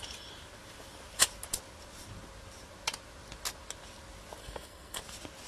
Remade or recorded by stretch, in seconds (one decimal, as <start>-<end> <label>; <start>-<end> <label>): 0.0-4.4 recorded; 4.4-5.0 remade; 5.0-5.5 recorded